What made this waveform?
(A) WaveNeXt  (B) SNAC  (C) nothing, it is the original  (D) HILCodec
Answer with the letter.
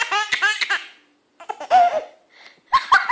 C